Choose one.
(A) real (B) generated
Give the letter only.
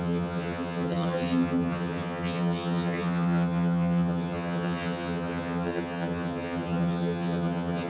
B